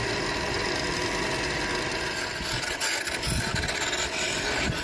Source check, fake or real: real